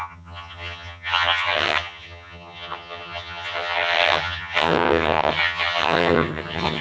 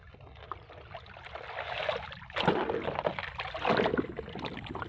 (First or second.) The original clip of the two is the second